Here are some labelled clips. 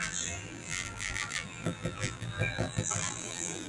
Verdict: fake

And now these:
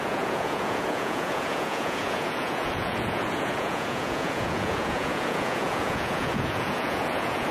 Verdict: fake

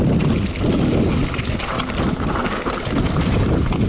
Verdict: real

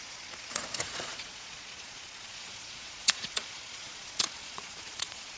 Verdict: fake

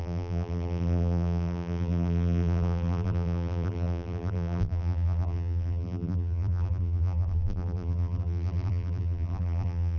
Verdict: fake